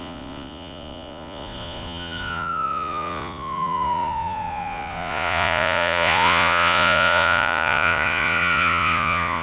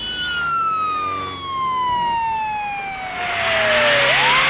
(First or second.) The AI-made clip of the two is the first